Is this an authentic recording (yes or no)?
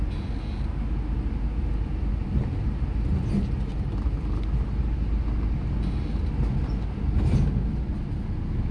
yes